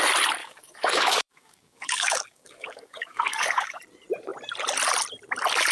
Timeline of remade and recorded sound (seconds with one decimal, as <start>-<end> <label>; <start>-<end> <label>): 0.0-0.4 recorded; 0.4-3.8 remade; 3.8-5.7 recorded